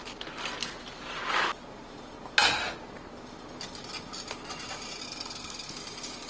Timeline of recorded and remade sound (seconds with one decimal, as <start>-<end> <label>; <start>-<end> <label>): 0.0-5.0 recorded; 5.0-5.7 remade; 5.7-6.3 recorded